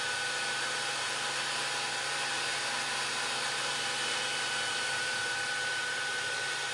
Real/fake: fake